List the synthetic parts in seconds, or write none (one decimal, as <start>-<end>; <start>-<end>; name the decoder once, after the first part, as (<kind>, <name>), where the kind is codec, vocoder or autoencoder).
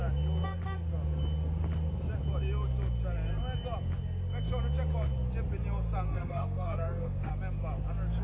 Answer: 6.1-7.3 (codec, SNAC)